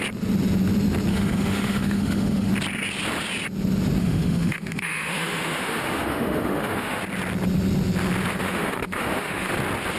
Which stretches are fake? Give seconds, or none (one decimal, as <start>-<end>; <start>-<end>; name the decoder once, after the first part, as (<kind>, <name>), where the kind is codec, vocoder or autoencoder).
1.1-2.5 (autoencoder, DAC-VAE); 4.0-7.0; 8.4-9.5